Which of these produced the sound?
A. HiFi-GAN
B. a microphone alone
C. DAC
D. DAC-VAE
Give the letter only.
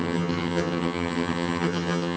A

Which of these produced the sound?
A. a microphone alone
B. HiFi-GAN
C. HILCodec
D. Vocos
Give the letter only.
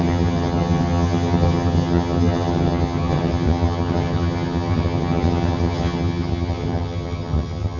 B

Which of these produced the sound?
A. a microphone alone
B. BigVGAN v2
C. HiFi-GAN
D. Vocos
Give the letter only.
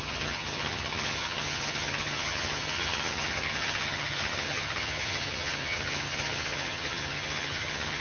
C